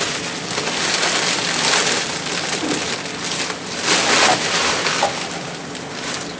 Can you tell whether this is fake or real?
real